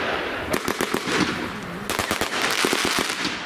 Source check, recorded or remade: recorded